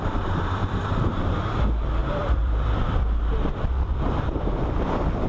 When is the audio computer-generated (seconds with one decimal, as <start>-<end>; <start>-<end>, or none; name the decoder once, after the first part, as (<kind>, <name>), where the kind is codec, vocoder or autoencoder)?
0.6-1.4 (vocoder, BigVGAN v2); 2.0-5.3